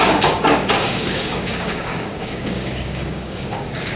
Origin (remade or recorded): remade